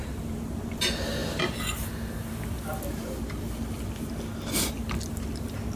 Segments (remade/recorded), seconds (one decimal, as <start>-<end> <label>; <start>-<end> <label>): 0.0-0.6 remade; 0.6-5.8 recorded